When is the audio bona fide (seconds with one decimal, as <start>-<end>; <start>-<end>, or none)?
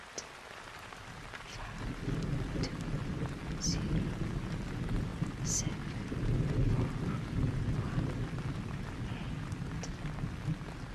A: 0.0-10.9